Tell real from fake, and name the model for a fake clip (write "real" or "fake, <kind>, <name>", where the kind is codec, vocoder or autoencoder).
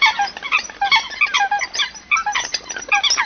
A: real